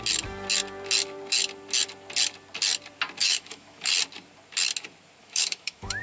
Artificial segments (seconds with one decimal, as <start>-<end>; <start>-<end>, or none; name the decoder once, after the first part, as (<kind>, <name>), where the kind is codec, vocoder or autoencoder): 3.2-3.9 (autoencoder, DAC-VAE); 5.2-6.0